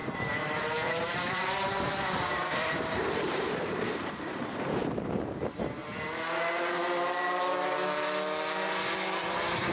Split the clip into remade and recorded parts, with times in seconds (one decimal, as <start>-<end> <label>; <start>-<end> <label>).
0.0-5.8 remade; 5.8-9.2 recorded; 9.2-9.7 remade

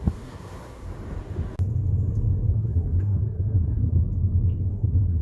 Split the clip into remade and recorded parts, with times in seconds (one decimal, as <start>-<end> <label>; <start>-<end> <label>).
0.0-0.9 remade; 0.9-2.5 recorded; 2.5-4.0 remade; 4.0-4.7 recorded; 4.7-5.2 remade

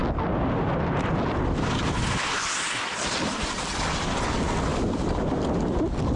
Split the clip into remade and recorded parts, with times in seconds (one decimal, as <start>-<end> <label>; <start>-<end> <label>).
0.0-6.2 recorded